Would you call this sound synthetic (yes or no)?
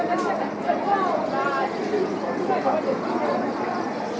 no